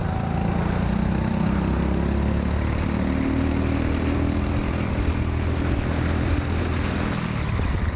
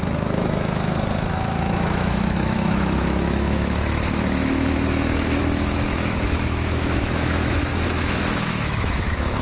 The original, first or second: first